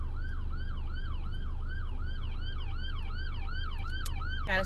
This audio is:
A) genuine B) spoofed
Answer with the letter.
A